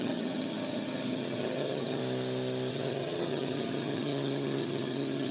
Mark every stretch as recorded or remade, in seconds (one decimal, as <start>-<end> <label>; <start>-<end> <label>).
0.0-2.0 remade; 2.0-2.7 recorded; 2.7-5.3 remade